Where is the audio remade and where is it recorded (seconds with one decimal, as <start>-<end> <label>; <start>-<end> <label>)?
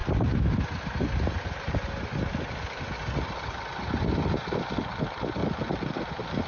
0.0-6.5 recorded